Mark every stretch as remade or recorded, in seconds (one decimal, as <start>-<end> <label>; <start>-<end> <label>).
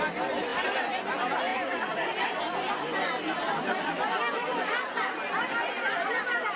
0.0-6.6 recorded